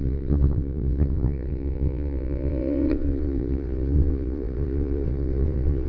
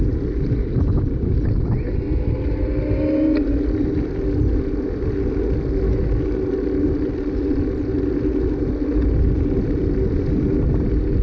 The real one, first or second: second